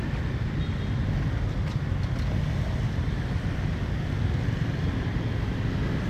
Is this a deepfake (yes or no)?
no